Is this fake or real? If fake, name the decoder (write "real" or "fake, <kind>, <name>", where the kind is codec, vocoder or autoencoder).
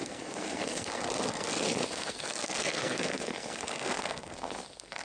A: fake, codec, SNAC